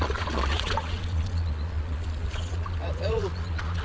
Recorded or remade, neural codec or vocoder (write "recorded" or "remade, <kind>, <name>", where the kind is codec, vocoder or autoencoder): remade, vocoder, Vocos